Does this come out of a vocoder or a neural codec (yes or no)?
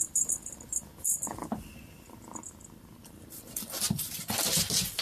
no